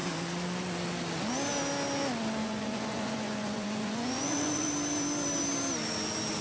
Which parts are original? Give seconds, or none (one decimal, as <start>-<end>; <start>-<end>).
0.0-2.4; 4.7-6.4